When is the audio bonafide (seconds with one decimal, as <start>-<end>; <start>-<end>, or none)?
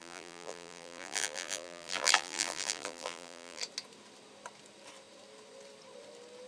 3.6-6.5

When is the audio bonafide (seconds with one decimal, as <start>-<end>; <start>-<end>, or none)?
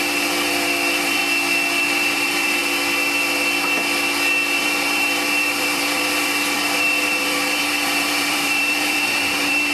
1.2-1.8; 2.6-4.6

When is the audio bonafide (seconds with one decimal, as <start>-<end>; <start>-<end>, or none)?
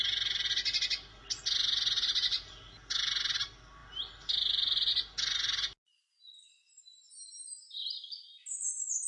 0.0-9.1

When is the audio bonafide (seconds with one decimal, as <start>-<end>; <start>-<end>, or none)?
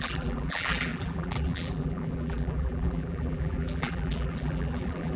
none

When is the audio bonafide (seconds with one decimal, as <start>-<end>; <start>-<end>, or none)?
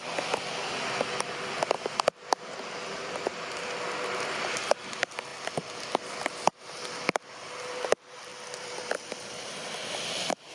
0.0-8.3; 9.7-10.5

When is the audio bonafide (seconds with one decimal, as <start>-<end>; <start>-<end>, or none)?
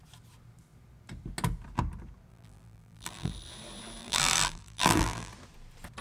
0.0-2.3; 3.3-4.0; 5.3-6.0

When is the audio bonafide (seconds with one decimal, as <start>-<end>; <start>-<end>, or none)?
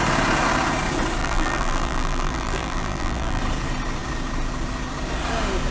0.0-1.2; 3.4-5.7